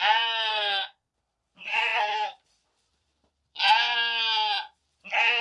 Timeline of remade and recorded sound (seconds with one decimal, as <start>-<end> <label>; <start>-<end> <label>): 0.0-0.5 recorded; 0.5-1.1 remade; 1.1-5.4 recorded